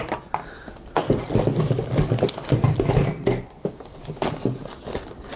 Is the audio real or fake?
real